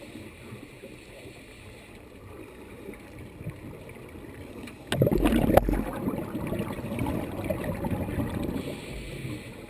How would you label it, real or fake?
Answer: real